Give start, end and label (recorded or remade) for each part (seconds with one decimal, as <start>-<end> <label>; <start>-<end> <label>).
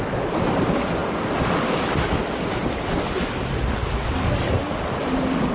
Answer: 0.0-5.5 recorded